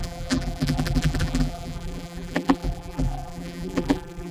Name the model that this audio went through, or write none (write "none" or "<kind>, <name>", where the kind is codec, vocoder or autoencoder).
vocoder, BigVGAN v2